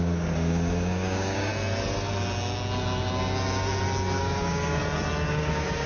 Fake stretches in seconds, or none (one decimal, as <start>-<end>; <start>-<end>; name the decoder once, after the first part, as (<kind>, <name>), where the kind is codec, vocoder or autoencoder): 0.0-1.5 (codec, DAC); 4.2-4.8; 5.3-5.9